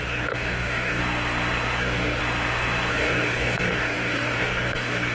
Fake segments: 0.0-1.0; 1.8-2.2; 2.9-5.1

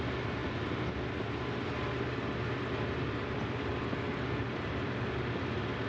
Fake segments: none

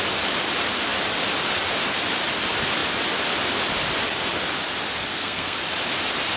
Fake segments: 5.1-5.6

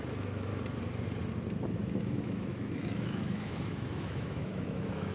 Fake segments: 0.0-0.5; 2.1-5.1

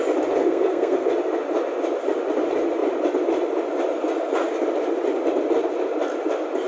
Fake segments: 0.4-1.1

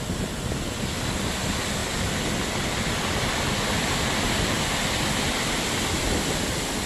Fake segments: none